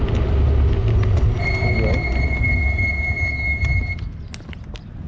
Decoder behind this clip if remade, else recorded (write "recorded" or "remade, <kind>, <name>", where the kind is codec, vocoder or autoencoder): recorded